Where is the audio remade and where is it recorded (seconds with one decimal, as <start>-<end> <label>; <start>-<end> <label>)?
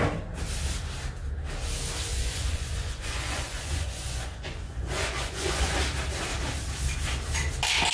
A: 0.0-2.1 recorded; 2.1-5.8 remade; 5.8-7.9 recorded